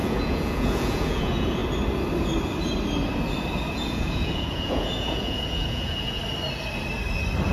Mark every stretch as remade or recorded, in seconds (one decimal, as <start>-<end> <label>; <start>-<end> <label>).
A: 0.0-1.6 remade; 1.6-3.7 recorded; 3.7-6.2 remade; 6.2-7.5 recorded